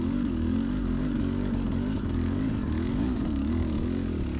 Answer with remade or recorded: remade